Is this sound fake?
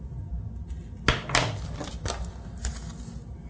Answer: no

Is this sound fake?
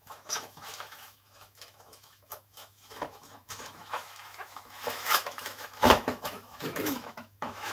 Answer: yes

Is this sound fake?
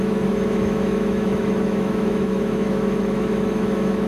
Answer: yes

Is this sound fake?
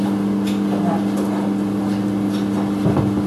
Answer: no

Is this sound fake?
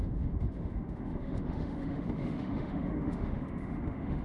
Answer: yes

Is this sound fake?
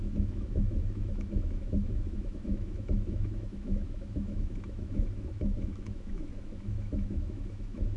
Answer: yes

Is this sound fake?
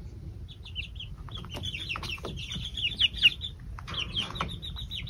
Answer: no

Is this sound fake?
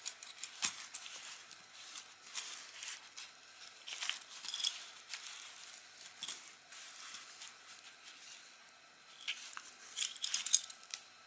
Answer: no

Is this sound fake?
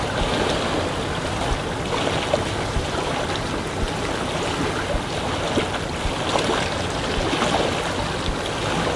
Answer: no